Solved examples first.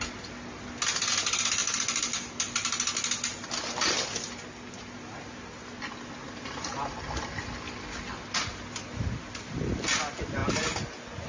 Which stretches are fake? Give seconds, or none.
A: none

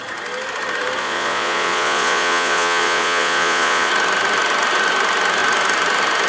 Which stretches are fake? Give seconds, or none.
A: 1.0-3.9 (vocoder, Vocos)

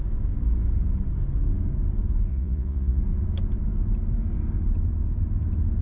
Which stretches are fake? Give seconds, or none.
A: 2.3-3.0 (vocoder, Vocos)